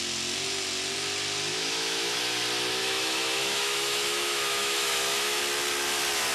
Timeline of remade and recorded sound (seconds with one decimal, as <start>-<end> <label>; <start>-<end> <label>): 0.0-1.5 recorded; 1.5-2.2 remade; 2.2-2.8 recorded; 2.8-5.4 remade; 5.4-6.3 recorded